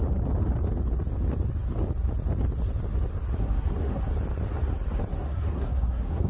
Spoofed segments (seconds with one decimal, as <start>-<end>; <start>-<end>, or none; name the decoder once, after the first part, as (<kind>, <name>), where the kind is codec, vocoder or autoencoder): 3.4-4.0 (codec, SNAC); 5.1-6.3